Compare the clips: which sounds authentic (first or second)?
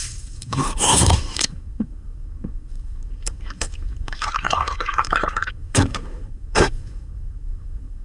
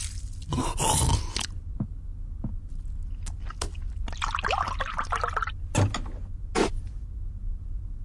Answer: second